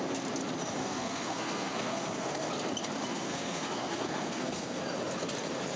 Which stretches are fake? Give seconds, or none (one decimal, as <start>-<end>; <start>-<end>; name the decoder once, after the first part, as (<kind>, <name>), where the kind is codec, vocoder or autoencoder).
0.8-2.5 (codec, SNAC); 3.1-4.8